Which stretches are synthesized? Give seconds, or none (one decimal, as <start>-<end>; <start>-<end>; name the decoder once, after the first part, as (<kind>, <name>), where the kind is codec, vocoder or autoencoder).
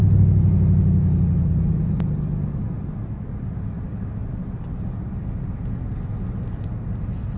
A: 4.2-4.7 (vocoder, BigVGAN v2)